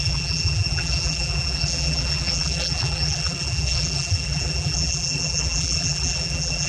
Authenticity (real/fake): fake